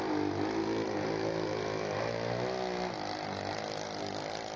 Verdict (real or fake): real